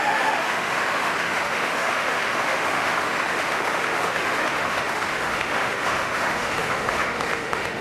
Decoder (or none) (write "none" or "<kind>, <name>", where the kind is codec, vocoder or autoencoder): autoencoder, DAC-VAE